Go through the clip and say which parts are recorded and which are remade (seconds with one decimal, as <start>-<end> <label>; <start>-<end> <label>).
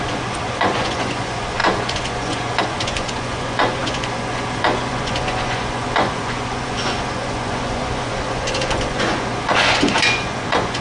0.0-10.8 remade